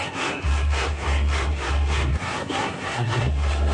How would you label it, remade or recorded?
remade